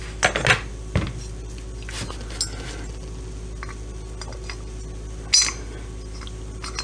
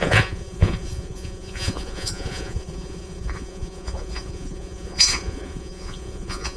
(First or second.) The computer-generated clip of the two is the second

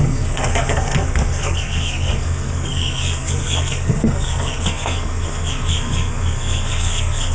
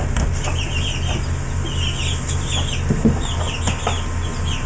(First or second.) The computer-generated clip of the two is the first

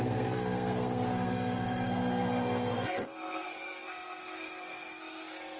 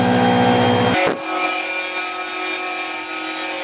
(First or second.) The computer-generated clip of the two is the first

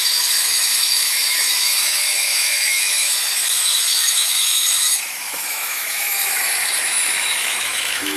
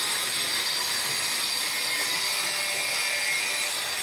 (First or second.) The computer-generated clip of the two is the first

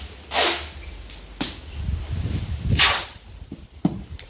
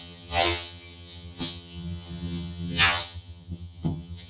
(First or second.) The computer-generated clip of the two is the second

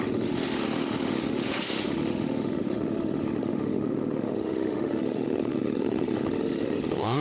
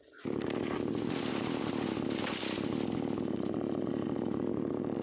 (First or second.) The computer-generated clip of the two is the first